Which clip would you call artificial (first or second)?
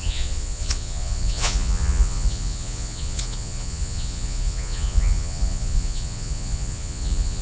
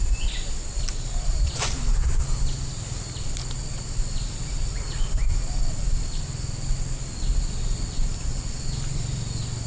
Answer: first